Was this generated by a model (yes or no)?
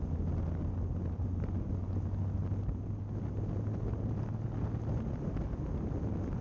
no